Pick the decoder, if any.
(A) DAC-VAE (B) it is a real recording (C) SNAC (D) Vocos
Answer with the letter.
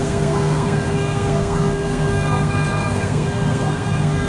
C